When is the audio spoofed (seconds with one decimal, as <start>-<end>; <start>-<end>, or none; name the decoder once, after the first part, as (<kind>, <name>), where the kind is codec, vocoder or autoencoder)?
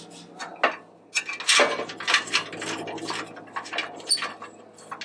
none